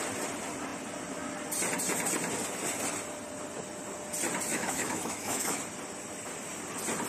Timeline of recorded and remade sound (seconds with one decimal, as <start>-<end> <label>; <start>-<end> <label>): 0.0-4.5 recorded; 4.5-5.6 remade; 5.6-7.1 recorded